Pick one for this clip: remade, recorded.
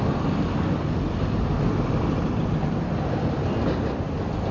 recorded